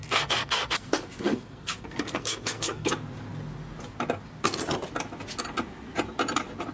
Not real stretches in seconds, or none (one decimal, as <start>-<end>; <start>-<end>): 0.0-2.9